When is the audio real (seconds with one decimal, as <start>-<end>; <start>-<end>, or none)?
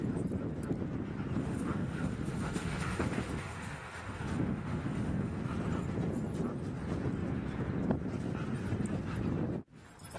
0.0-1.4; 5.4-10.2